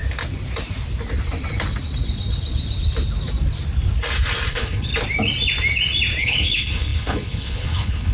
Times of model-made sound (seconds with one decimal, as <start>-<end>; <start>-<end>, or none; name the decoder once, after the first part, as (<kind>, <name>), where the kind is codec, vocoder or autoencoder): 4.5-4.9 (codec, HILCodec); 6.2-8.1